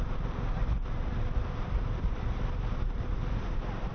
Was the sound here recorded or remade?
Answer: recorded